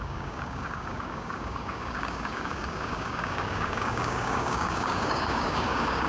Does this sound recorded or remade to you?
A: remade